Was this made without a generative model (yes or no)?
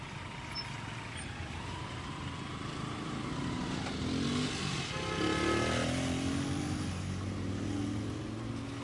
yes